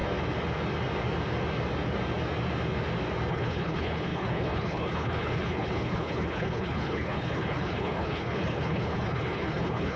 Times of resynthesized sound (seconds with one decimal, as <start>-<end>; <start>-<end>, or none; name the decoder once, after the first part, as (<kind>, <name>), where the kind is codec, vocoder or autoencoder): 3.3-10.0 (codec, HILCodec)